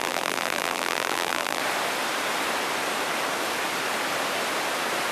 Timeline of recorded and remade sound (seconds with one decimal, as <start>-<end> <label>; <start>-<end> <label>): 0.0-1.6 remade; 1.6-5.1 recorded